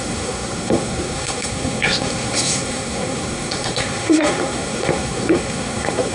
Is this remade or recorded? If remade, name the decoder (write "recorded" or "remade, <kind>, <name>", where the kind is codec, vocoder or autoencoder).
remade, codec, SNAC